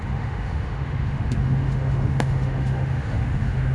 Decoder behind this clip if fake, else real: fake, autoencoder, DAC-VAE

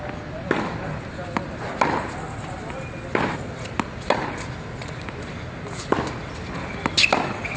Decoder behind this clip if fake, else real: real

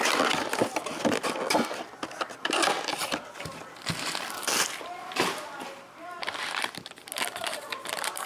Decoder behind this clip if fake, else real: real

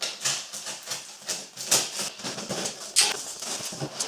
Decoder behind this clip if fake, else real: real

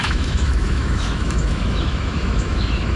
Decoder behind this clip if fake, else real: fake, autoencoder, DAC-VAE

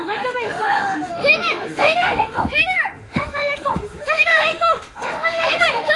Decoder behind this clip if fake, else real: fake, autoencoder, DAC-VAE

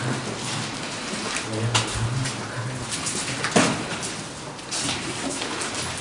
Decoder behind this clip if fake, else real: real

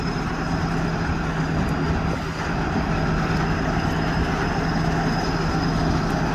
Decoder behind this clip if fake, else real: real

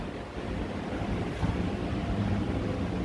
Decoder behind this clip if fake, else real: real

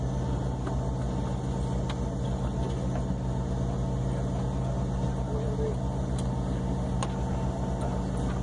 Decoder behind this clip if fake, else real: real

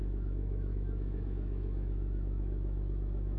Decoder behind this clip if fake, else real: fake, autoencoder, DAC-VAE